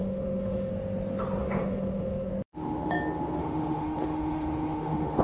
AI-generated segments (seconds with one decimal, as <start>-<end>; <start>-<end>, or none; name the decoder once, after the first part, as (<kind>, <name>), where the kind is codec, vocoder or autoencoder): 0.0-0.7 (autoencoder, DAC-VAE); 1.4-2.3; 3.4-5.2